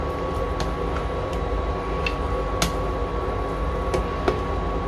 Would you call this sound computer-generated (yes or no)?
no